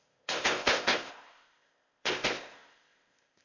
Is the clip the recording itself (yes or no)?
no